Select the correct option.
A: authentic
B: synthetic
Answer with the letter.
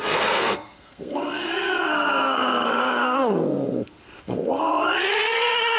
B